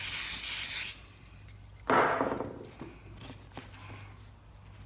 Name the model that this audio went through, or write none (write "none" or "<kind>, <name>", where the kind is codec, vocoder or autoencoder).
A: none